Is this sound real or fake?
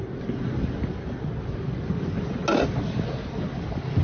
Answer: real